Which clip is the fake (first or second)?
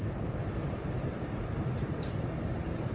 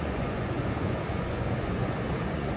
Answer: second